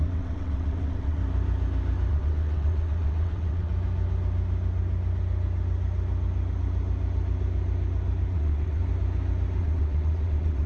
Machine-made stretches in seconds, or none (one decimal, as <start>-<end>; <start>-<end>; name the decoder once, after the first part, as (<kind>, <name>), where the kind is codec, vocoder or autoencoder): 0.0-1.2 (vocoder, WaveNeXt); 2.1-3.7; 8.3-8.8; 9.6-10.7